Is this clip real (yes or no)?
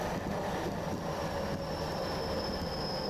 yes